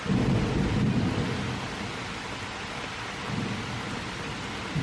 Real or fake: real